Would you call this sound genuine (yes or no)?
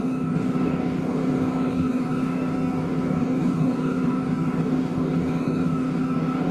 no